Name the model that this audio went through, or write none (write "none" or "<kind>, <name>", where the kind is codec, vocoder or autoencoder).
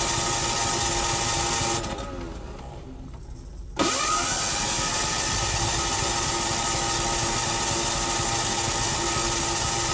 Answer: none